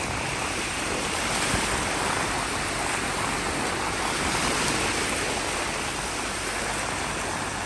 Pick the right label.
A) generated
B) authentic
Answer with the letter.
B